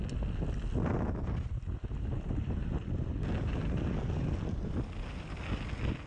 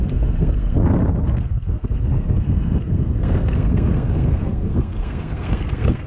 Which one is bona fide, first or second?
first